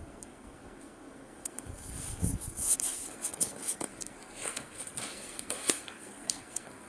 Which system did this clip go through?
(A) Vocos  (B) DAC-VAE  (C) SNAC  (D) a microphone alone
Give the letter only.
C